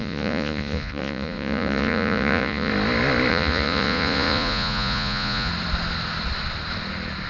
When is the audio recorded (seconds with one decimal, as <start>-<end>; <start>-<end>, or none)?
2.7-3.3; 5.5-7.3